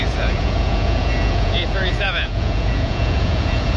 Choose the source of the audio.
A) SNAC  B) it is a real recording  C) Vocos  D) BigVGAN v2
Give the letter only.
C